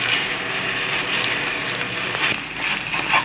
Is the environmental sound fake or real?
real